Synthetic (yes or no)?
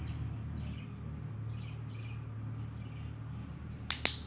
no